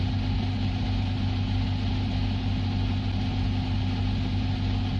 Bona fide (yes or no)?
yes